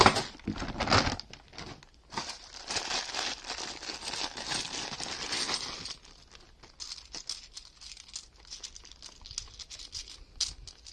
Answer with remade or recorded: recorded